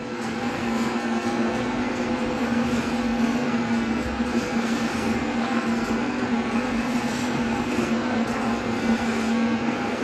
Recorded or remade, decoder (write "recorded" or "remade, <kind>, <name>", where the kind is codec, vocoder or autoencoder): remade, codec, SNAC